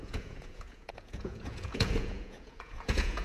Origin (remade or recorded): remade